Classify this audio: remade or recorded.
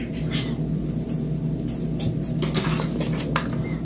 recorded